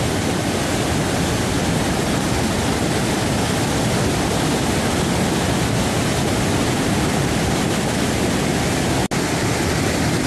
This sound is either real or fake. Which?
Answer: real